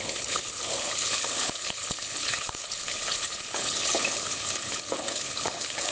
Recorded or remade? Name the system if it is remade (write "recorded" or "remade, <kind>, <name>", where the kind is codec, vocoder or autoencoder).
remade, codec, HILCodec